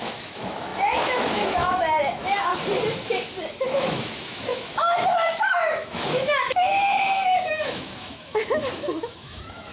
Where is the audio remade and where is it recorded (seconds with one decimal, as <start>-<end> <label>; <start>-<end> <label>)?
0.0-2.5 remade; 2.5-3.6 recorded; 3.6-9.7 remade